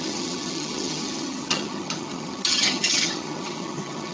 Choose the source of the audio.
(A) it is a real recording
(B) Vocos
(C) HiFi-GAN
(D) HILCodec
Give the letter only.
C